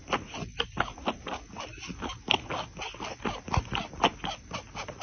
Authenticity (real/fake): real